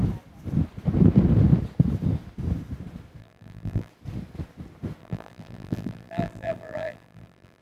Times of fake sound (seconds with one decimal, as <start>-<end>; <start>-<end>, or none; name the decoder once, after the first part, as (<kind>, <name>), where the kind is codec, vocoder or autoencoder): 3.2-3.9 (vocoder, BigVGAN v2); 5.0-7.6